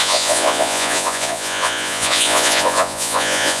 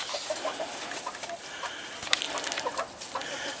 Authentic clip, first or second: second